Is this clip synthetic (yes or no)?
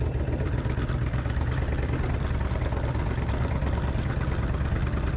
no